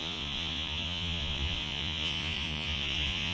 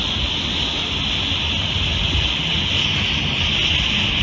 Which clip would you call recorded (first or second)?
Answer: second